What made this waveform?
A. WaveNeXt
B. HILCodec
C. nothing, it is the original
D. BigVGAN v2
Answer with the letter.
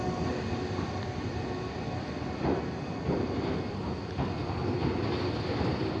C